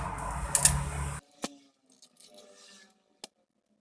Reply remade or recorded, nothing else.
recorded